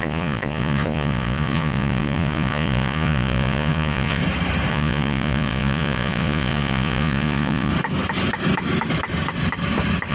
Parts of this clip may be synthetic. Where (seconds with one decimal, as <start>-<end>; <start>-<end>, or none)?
0.0-4.2; 4.7-7.7